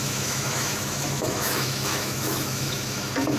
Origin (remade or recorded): remade